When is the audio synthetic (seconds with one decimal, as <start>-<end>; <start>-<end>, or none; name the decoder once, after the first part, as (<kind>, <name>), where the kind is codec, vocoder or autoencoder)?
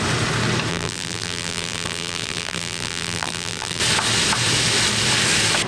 0.7-3.8 (vocoder, BigVGAN v2)